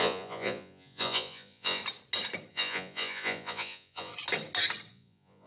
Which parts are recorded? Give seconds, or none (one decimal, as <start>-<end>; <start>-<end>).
1.8-2.5; 4.1-4.9